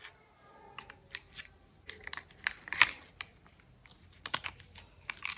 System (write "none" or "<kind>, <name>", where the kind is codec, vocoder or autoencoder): none